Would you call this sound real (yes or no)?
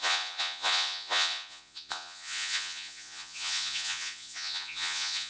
no